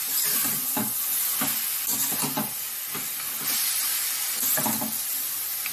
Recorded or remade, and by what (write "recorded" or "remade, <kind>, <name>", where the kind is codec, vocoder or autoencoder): recorded